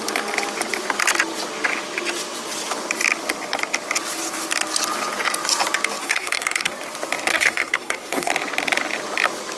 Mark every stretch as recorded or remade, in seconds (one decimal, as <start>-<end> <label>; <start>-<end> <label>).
0.0-6.0 recorded; 6.0-6.7 remade; 6.7-7.3 recorded; 7.3-8.3 remade; 8.3-9.6 recorded